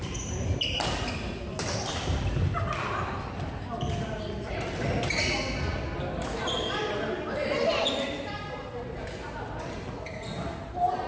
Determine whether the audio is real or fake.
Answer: real